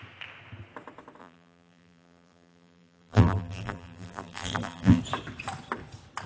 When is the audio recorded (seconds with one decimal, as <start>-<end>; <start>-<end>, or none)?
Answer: 0.0-1.2; 5.0-6.3